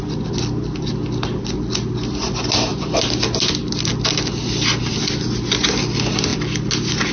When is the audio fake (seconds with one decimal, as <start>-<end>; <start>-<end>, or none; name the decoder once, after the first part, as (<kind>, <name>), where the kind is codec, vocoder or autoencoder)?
none

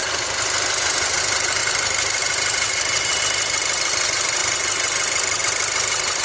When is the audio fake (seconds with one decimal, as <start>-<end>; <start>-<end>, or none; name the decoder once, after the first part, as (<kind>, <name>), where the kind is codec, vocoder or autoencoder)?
none